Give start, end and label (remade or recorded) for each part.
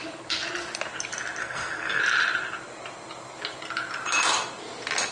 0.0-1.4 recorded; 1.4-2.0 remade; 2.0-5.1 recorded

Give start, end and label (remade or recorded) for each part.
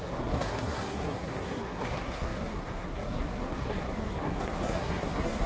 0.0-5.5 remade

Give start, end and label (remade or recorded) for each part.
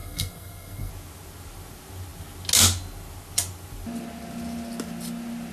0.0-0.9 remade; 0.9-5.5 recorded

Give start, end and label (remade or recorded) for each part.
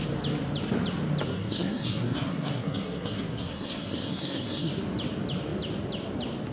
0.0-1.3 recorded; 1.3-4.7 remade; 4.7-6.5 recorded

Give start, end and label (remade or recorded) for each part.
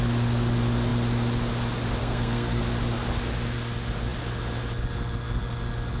0.0-2.0 recorded; 2.0-2.6 remade; 2.6-6.0 recorded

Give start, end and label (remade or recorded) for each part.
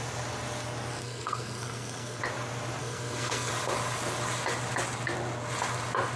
0.0-1.0 recorded; 1.0-2.2 remade; 2.2-2.8 recorded; 2.8-3.5 remade; 3.5-6.2 recorded